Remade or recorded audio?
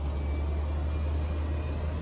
recorded